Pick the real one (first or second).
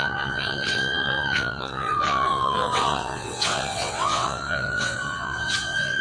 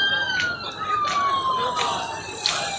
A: second